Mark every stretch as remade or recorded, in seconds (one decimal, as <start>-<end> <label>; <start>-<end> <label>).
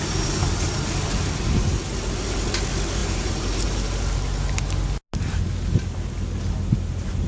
0.0-3.0 recorded; 3.0-3.6 remade; 3.6-7.3 recorded